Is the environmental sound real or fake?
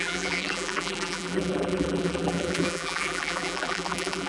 fake